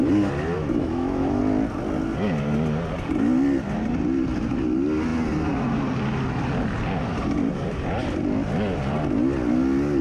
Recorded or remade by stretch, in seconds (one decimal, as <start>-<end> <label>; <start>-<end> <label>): 0.0-0.6 recorded; 0.6-1.4 remade; 1.4-10.0 recorded